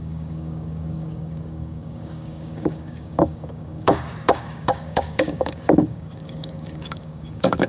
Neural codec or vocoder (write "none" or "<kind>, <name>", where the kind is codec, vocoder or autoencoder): codec, DAC